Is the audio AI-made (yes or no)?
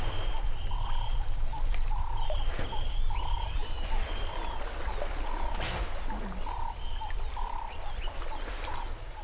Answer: no